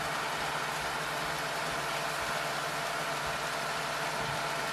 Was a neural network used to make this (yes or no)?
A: no